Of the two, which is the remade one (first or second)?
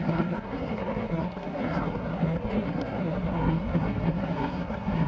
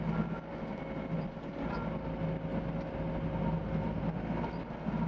first